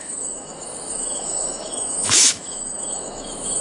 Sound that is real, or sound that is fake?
fake